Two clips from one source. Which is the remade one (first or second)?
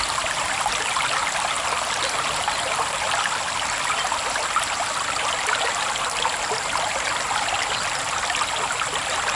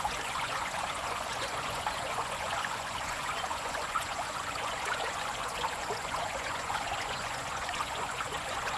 second